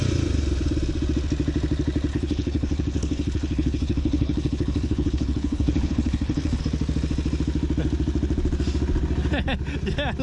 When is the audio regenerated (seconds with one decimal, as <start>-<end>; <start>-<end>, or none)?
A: 2.1-6.6